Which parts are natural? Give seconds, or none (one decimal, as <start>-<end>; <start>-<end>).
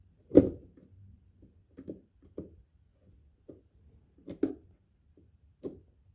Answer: 2.9-4.5